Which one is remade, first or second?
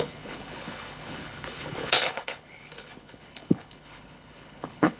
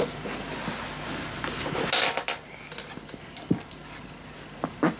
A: first